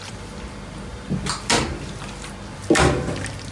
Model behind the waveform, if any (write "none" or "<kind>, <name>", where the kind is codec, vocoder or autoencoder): none